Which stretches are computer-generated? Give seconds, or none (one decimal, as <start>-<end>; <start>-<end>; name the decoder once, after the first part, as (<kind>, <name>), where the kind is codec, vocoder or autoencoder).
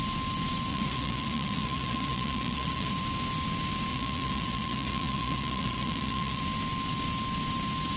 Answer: 0.7-2.9 (vocoder, Vocos); 3.9-6.4